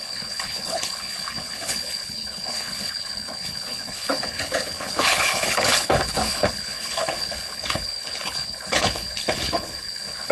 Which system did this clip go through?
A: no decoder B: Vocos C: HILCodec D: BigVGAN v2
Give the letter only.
C